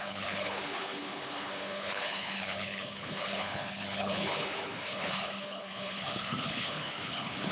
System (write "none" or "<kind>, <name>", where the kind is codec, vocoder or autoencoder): codec, HILCodec